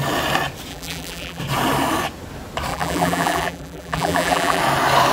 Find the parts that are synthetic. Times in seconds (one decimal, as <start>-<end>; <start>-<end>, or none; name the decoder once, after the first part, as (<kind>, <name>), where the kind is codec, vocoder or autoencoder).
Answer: 0.7-1.4 (vocoder, BigVGAN v2); 2.7-4.6